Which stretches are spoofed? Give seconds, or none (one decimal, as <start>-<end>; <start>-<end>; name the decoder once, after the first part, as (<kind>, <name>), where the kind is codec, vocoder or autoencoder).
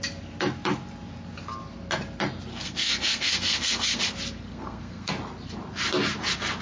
2.5-4.0 (codec, SNAC); 4.5-5.1